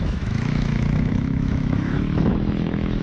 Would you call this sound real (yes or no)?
no